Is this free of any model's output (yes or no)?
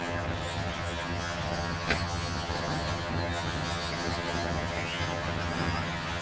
no